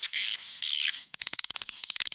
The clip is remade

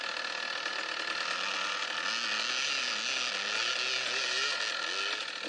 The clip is recorded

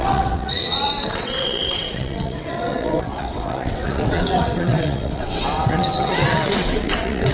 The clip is remade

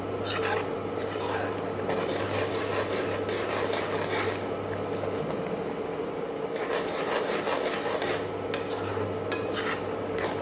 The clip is recorded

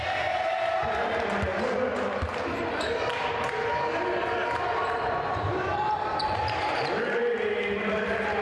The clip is recorded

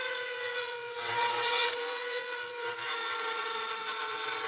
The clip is remade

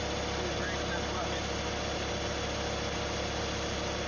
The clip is recorded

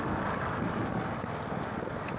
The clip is remade